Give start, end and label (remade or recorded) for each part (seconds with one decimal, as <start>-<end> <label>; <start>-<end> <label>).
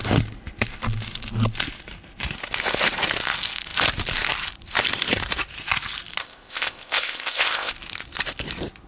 0.0-6.2 recorded; 6.2-7.7 remade; 7.7-8.9 recorded